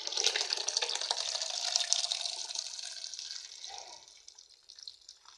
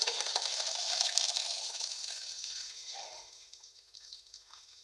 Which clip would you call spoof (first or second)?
second